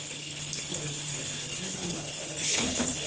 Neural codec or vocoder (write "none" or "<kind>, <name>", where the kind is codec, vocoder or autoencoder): codec, HILCodec